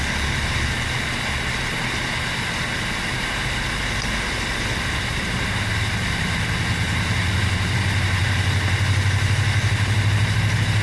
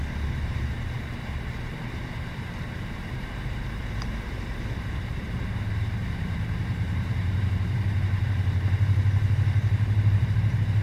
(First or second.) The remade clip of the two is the second